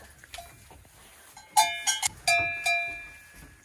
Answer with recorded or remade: recorded